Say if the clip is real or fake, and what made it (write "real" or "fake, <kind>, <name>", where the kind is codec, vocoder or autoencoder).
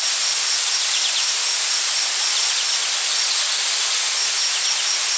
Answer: real